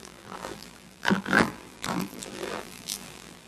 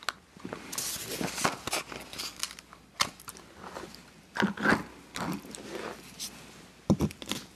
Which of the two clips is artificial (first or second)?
first